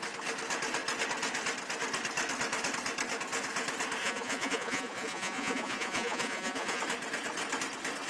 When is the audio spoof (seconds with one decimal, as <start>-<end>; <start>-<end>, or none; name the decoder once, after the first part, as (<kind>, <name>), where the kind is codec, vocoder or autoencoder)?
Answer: 4.0-6.8 (vocoder, Vocos)

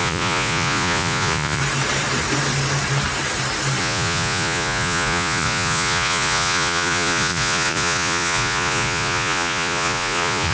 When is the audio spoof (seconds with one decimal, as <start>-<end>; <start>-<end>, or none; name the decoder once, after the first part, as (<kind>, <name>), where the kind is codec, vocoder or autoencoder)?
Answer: 0.0-1.6 (vocoder, Vocos); 3.8-10.5